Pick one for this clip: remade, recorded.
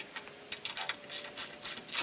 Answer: recorded